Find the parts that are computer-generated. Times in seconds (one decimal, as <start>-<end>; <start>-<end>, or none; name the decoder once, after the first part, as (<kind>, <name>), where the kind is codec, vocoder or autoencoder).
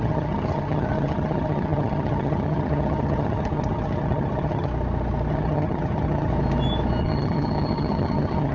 0.0-4.7 (vocoder, HiFi-GAN); 5.3-6.3; 7.0-8.5